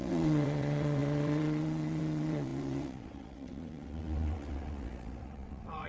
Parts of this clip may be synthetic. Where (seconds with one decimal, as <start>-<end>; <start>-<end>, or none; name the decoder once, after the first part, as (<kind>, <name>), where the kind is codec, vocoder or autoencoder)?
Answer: 0.0-5.9 (vocoder, WaveNeXt)